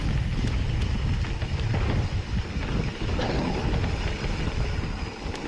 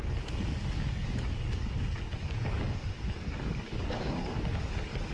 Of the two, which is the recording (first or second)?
first